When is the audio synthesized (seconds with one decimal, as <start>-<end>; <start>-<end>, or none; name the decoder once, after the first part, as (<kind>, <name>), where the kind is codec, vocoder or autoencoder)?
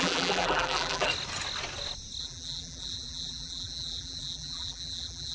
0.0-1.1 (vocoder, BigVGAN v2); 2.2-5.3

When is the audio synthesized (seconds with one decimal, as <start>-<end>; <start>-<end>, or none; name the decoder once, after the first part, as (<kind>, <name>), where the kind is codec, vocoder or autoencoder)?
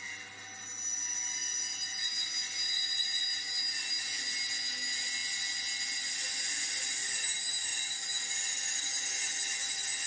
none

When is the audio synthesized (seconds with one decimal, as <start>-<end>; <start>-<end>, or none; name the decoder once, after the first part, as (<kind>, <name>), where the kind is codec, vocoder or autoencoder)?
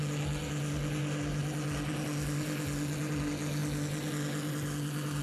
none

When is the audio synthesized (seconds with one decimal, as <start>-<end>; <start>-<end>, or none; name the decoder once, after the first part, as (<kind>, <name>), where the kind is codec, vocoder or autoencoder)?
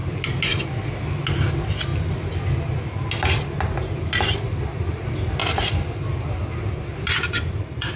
5.4-6.5 (vocoder, BigVGAN v2); 6.9-7.6